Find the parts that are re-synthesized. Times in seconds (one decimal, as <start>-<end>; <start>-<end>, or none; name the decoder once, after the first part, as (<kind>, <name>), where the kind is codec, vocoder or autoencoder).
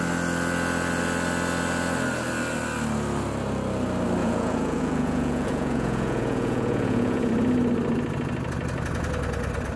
4.2-7.3 (vocoder, Vocos)